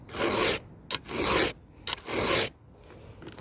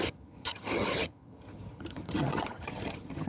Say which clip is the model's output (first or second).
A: second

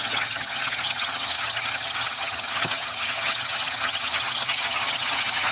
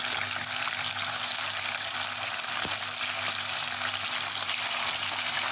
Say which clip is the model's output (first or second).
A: first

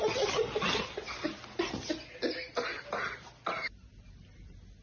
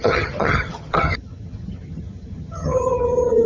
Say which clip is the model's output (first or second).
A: second